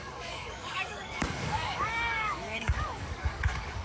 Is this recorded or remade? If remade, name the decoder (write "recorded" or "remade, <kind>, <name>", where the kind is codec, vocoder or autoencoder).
remade, codec, DAC